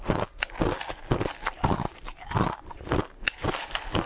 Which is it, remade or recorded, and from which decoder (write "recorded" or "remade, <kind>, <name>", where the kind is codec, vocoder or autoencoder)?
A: recorded